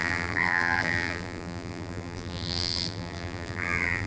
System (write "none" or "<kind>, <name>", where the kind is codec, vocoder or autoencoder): vocoder, BigVGAN v2